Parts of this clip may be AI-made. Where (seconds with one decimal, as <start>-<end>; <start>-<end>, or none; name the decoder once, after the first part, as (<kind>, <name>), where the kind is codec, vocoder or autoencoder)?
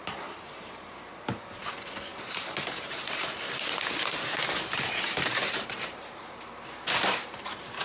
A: 0.0-7.8 (vocoder, BigVGAN v2)